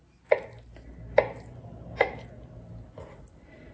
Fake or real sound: real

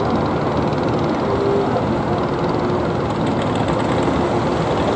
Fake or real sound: real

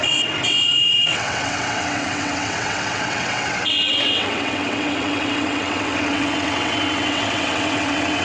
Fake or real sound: fake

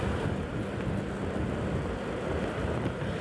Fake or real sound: real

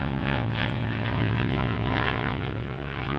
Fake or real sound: fake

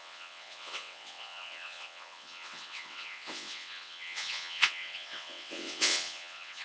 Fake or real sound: fake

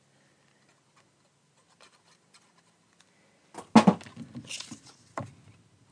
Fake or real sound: real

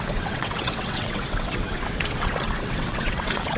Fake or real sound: fake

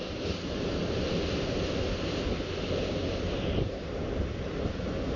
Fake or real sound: real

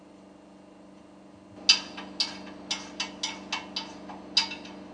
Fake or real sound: real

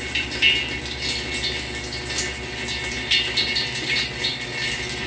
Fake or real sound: real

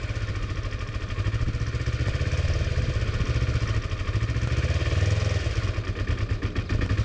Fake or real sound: real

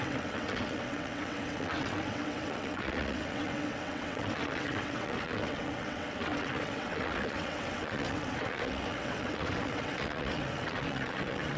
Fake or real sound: fake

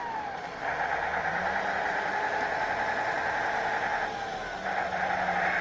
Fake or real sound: real